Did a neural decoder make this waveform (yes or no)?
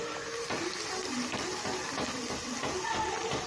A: no